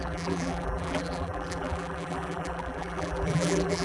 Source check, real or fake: fake